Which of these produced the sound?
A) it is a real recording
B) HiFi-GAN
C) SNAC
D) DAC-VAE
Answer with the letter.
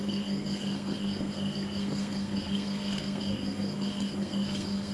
C